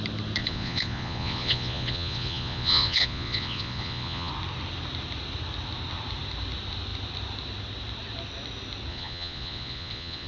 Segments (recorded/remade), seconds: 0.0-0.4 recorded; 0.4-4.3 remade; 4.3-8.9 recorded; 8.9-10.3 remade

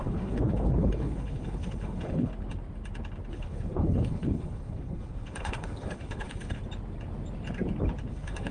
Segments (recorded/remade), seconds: 0.0-2.3 remade; 2.3-3.3 recorded; 3.3-6.6 remade; 6.6-8.1 recorded; 8.1-8.5 remade